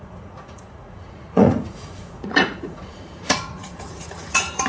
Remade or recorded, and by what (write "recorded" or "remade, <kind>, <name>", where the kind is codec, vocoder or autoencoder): remade, vocoder, Vocos